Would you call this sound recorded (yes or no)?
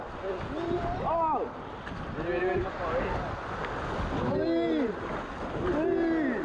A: yes